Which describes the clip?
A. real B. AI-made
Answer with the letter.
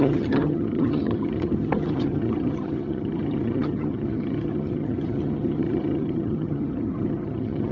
B